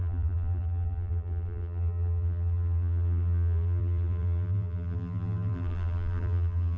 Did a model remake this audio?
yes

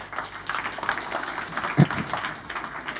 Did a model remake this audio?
no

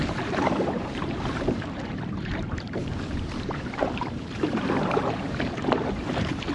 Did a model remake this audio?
yes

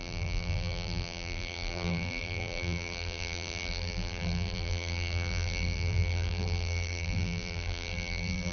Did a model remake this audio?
yes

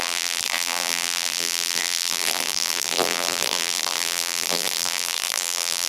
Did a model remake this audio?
yes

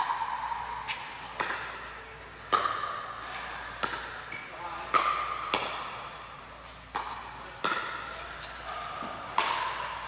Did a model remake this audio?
no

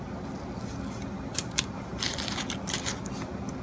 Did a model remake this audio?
no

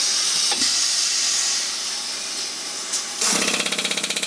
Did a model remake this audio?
no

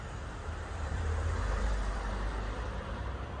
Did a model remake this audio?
yes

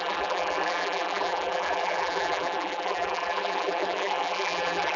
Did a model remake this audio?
yes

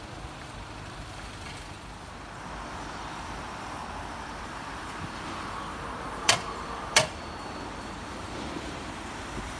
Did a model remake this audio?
yes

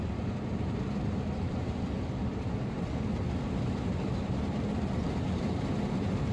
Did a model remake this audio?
no